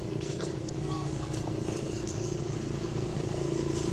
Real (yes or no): no